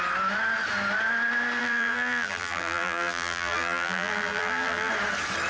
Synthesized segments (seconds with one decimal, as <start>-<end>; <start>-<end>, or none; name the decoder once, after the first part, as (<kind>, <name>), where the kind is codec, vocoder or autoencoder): 1.6-4.9 (vocoder, BigVGAN v2)